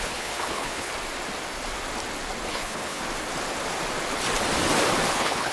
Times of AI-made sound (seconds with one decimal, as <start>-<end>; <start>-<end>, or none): 0.0-0.9; 2.5-3.0; 5.1-5.5